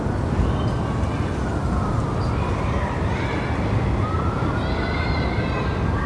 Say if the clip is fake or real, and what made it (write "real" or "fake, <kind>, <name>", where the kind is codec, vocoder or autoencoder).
real